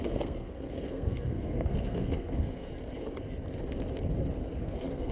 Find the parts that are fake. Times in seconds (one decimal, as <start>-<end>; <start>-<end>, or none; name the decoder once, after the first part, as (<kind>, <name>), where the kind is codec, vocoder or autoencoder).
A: 0.0-2.7 (codec, SNAC); 4.6-5.1